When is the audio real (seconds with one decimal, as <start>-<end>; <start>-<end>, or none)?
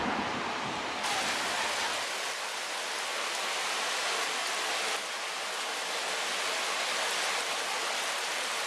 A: 0.0-8.7